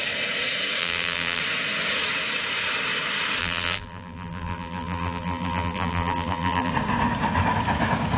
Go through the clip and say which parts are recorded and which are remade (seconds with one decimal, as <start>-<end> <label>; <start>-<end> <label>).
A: 0.0-0.8 recorded; 0.8-1.4 remade; 1.4-3.4 recorded; 3.4-6.7 remade; 6.7-8.2 recorded